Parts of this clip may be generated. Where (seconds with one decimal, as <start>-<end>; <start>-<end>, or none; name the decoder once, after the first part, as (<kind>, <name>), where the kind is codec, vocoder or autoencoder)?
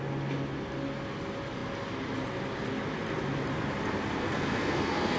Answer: 4.2-5.2 (codec, SNAC)